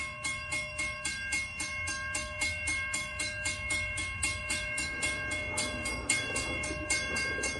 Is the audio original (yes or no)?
no